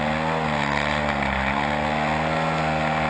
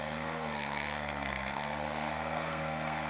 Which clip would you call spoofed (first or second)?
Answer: second